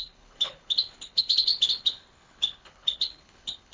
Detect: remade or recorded remade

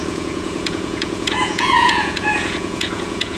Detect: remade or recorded remade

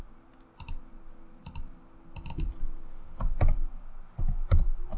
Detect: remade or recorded recorded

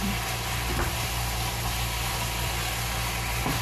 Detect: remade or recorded recorded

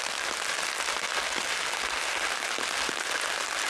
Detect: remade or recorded recorded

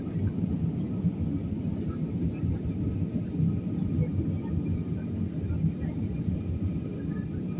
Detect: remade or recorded recorded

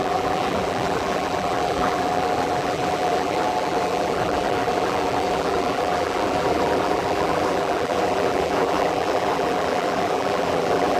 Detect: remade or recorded remade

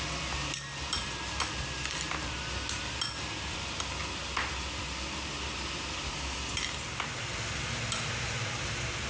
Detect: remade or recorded recorded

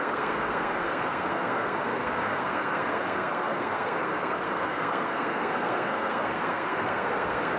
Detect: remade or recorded remade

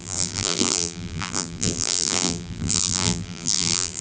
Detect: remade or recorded remade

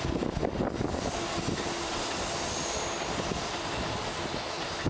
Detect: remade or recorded recorded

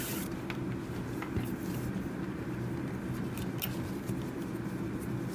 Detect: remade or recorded recorded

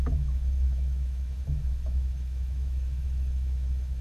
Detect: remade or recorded remade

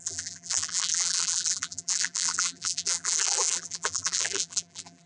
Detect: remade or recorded remade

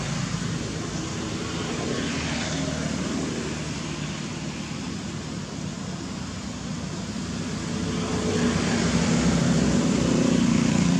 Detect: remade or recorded recorded